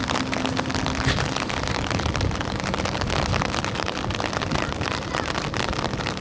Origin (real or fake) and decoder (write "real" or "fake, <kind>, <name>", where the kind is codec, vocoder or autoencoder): real